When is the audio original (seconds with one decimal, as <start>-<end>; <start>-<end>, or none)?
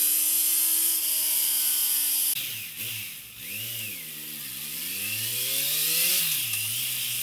0.0-7.2